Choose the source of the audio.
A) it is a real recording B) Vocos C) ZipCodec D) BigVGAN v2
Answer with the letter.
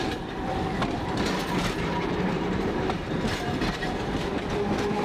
A